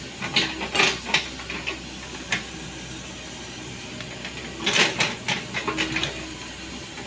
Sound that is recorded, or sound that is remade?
recorded